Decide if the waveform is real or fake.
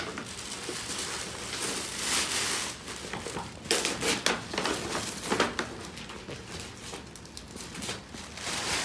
real